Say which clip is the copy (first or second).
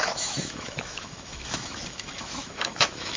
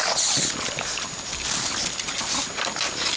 first